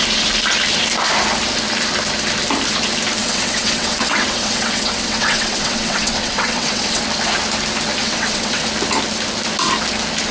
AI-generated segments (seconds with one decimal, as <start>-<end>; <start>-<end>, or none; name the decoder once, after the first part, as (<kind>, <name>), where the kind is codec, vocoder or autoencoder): 3.2-7.0 (vocoder, WaveNeXt); 8.0-8.7